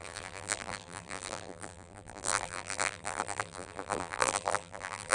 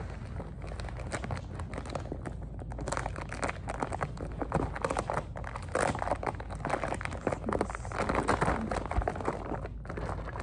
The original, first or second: second